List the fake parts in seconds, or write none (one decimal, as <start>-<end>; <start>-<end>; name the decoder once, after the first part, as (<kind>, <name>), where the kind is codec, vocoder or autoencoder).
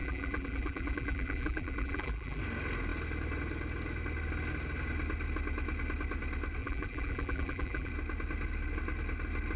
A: 0.0-2.4 (vocoder, BigVGAN v2); 6.6-7.9